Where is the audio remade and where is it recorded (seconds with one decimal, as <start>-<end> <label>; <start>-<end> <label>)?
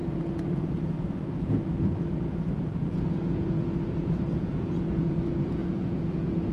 0.0-6.5 remade